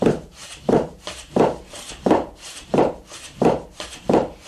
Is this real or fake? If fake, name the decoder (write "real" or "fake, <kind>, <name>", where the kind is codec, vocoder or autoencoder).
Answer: fake, vocoder, BigVGAN v2